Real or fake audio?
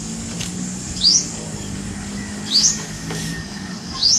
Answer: fake